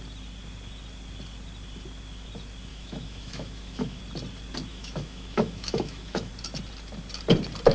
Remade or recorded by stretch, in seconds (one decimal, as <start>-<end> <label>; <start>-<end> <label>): 0.0-2.7 recorded; 2.7-4.0 remade; 4.0-4.7 recorded; 4.7-6.3 remade; 6.3-7.7 recorded